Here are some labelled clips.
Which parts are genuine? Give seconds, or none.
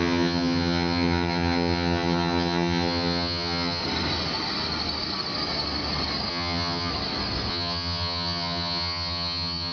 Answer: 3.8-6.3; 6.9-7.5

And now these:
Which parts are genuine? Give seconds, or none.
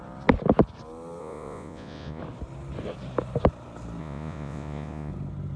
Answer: 0.0-1.2; 2.2-4.0; 5.1-5.6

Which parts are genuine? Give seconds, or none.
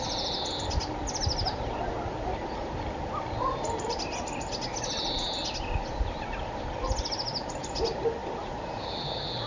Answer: 0.0-9.5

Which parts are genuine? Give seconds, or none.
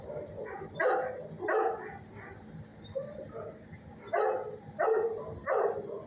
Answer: 0.0-6.1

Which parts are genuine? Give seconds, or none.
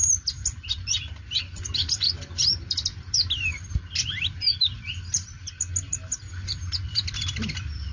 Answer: 0.0-7.9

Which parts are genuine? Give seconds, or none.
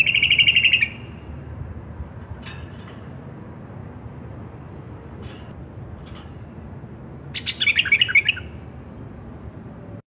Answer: 0.0-10.1